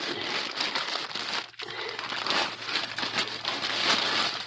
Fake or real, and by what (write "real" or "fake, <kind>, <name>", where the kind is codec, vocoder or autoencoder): real